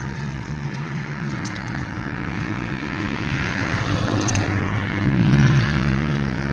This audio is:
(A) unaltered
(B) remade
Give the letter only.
B